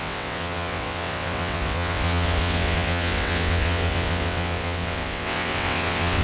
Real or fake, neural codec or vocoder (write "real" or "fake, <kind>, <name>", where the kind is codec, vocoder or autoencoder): fake, vocoder, WaveNeXt